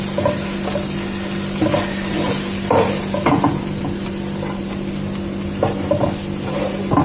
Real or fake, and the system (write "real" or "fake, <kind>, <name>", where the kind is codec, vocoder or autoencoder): real